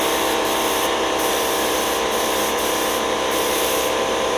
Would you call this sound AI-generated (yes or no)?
yes